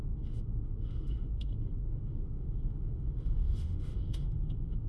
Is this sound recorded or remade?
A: remade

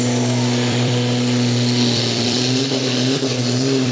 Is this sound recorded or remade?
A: remade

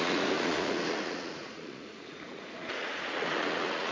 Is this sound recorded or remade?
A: remade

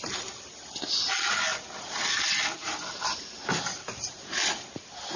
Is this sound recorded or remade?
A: recorded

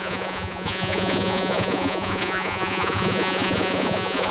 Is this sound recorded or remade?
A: remade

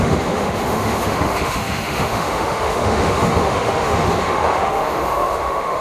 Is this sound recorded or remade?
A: remade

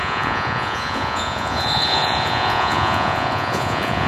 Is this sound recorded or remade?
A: remade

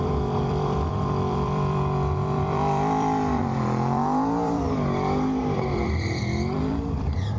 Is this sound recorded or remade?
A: remade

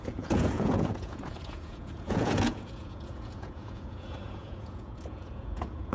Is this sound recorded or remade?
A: remade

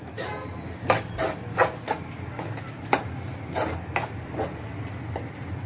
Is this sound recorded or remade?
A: recorded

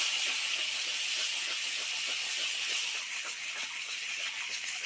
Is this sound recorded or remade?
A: recorded